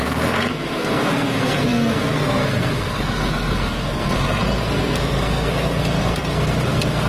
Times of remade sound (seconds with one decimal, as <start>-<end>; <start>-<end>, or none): 0.0-7.1